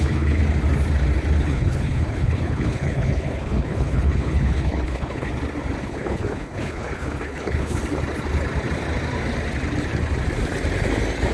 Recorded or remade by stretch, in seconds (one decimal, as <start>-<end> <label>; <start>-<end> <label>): 0.0-0.4 remade; 0.4-1.4 recorded; 1.4-5.3 remade; 5.3-5.8 recorded; 5.8-7.8 remade; 7.8-11.3 recorded